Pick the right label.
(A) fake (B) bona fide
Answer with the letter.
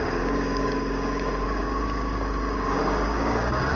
A